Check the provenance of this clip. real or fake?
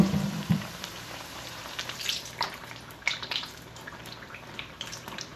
fake